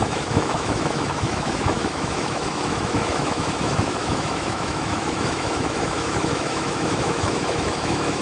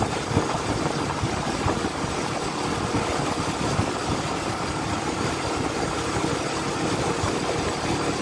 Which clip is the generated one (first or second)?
first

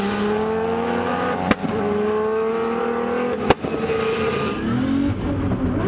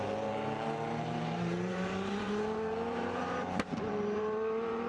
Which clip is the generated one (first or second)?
second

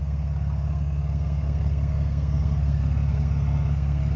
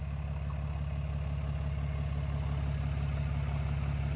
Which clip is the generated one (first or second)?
first